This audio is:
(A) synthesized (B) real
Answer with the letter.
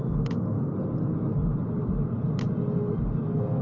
B